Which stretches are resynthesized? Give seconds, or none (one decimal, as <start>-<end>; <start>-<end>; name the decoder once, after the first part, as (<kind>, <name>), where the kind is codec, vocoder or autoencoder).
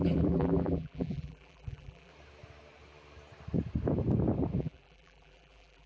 0.0-2.1 (vocoder, BigVGAN v2); 4.6-5.9